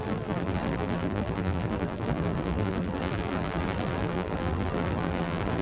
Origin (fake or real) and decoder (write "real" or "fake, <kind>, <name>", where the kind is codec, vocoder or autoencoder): fake, vocoder, BigVGAN v2